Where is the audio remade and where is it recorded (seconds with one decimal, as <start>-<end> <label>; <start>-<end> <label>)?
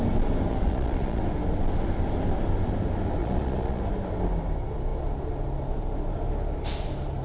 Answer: 0.0-0.5 recorded; 0.5-1.2 remade; 1.2-3.2 recorded; 3.2-3.8 remade; 3.8-7.2 recorded